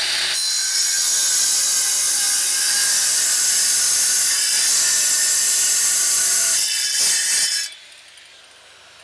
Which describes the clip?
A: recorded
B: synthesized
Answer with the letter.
A